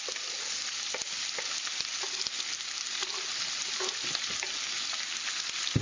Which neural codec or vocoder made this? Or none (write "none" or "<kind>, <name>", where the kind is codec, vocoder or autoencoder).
none